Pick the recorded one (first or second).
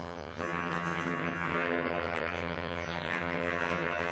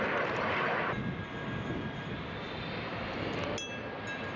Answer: second